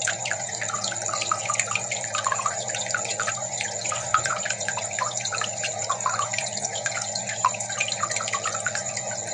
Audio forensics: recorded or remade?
remade